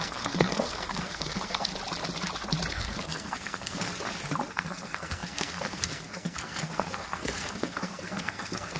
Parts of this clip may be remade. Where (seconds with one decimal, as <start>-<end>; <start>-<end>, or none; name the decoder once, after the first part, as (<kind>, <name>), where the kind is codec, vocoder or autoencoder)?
0.0-1.7 (codec, SNAC); 2.7-3.9; 4.5-8.8